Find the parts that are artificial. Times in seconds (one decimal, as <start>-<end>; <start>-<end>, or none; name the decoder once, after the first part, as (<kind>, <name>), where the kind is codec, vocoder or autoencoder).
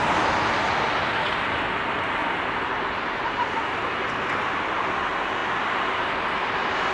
none